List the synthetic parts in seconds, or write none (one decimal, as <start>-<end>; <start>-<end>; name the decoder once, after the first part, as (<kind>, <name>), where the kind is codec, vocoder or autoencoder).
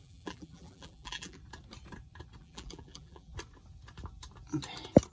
0.0-1.4 (vocoder, BigVGAN v2); 2.4-3.3